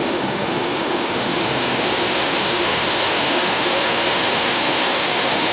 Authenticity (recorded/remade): remade